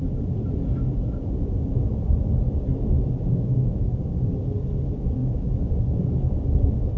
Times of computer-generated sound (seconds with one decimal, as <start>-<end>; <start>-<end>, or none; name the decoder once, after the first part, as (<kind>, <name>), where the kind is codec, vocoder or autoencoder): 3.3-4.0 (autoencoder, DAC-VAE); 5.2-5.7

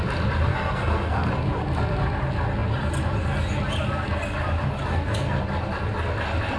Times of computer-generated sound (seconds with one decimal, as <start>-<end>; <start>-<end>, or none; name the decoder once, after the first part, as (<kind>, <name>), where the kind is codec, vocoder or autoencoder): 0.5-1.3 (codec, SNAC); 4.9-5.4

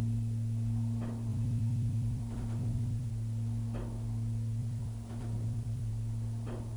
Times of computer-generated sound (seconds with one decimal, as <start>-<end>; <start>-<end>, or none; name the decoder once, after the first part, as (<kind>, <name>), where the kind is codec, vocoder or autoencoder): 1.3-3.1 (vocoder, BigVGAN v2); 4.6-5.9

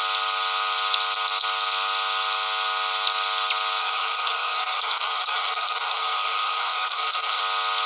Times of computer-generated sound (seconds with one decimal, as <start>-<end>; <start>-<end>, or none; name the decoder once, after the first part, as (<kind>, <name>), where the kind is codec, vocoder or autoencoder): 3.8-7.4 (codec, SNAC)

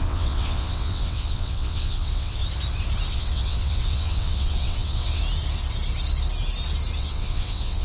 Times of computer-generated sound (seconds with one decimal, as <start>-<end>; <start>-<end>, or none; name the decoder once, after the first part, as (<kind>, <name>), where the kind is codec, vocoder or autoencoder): 0.0-2.4 (vocoder, WaveNeXt); 3.1-5.2; 7.0-7.8

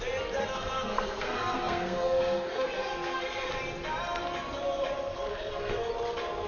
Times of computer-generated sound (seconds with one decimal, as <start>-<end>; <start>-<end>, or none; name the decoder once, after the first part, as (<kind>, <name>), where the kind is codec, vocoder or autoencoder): 0.4-3.5 (codec, SNAC); 5.3-5.9